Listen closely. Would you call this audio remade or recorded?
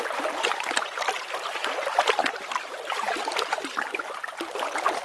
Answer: remade